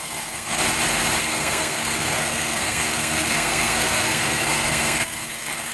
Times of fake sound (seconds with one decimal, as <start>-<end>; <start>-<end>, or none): 0.0-0.6; 1.2-5.7